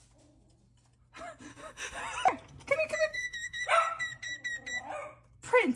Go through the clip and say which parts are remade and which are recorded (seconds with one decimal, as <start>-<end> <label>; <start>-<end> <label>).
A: 0.0-1.5 recorded; 1.5-2.0 remade; 2.0-3.1 recorded; 3.1-3.6 remade; 3.6-5.8 recorded